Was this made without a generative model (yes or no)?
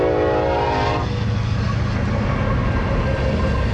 yes